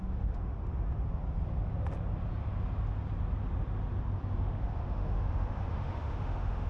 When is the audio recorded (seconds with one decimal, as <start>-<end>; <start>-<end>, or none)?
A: 0.5-4.4